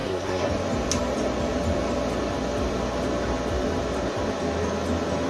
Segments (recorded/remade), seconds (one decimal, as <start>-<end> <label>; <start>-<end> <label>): 0.0-0.5 remade; 0.5-5.3 recorded